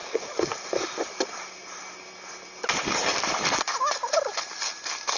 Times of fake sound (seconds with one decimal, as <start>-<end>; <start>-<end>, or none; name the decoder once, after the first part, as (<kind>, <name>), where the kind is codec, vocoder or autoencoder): none